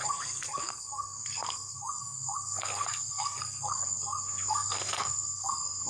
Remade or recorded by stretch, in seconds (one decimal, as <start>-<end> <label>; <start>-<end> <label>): 0.0-5.9 remade